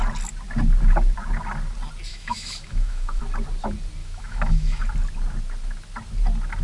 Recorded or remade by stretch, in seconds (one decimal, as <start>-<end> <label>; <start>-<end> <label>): 0.0-2.1 recorded; 2.1-3.2 remade; 3.2-4.0 recorded; 4.0-4.8 remade; 4.8-6.6 recorded